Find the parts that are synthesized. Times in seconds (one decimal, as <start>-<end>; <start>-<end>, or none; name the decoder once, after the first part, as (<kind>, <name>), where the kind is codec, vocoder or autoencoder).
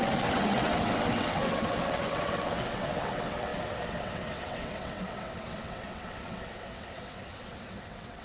0.0-8.2 (vocoder, WaveNeXt)